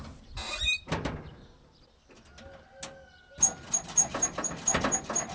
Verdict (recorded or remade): recorded